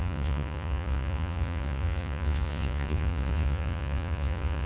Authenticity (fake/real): fake